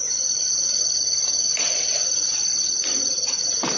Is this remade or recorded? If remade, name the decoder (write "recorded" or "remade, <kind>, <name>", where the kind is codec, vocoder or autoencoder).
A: recorded